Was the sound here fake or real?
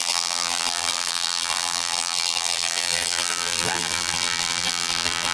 fake